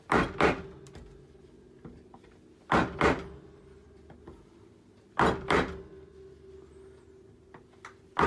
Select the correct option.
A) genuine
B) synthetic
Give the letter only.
A